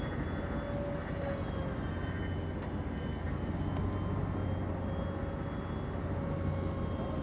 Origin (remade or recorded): recorded